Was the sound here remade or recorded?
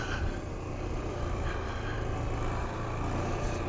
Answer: recorded